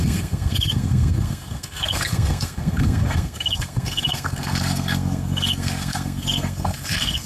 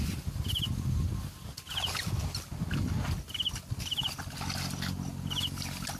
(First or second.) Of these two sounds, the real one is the second